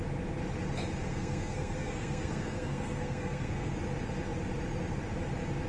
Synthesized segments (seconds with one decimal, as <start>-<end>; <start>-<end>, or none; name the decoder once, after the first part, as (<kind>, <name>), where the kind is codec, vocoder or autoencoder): 1.0-3.7 (codec, SNAC)